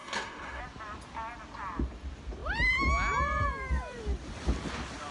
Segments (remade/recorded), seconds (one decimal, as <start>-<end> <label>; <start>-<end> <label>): 0.0-0.6 remade; 0.6-5.1 recorded